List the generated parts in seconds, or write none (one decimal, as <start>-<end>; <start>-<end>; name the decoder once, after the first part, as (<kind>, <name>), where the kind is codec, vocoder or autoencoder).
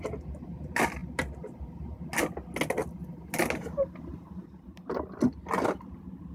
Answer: none